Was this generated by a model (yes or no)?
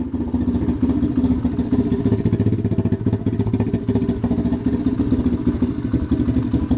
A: no